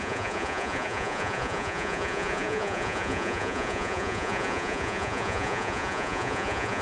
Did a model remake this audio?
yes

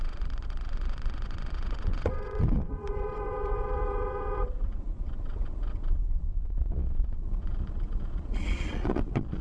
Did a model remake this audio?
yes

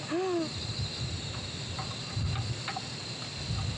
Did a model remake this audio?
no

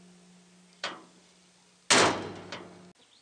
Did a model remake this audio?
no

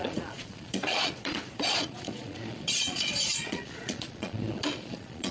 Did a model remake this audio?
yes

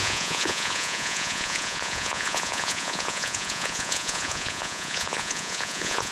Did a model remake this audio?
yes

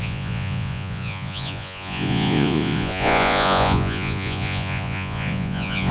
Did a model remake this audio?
yes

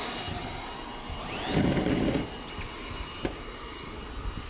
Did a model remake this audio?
no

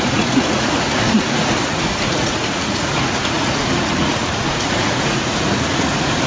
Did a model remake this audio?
yes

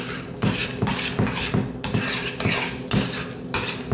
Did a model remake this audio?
no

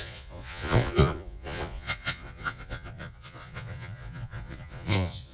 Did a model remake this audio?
yes